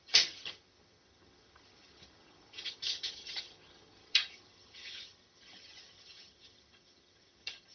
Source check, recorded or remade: remade